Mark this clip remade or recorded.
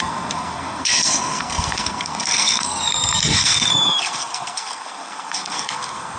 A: remade